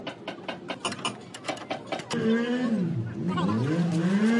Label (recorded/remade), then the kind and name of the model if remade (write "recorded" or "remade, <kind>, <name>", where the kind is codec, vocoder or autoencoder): recorded